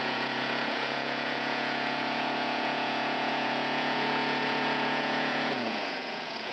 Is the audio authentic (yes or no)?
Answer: no